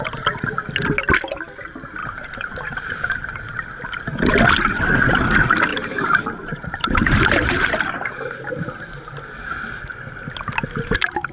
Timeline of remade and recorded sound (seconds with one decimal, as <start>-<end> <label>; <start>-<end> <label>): 0.0-2.0 recorded; 2.0-3.4 remade; 3.4-5.7 recorded; 5.7-8.5 remade; 8.5-11.3 recorded